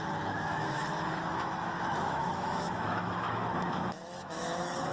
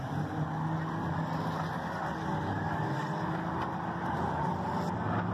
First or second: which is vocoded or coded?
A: first